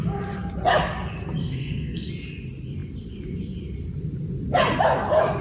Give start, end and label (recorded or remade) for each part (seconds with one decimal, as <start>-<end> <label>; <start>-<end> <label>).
0.0-1.4 recorded; 1.4-2.1 remade; 2.1-5.4 recorded

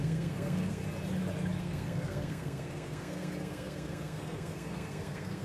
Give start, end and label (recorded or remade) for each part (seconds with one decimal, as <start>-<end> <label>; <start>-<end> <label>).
0.0-0.8 remade; 0.8-1.6 recorded; 1.6-5.4 remade